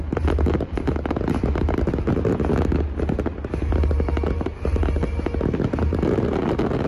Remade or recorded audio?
recorded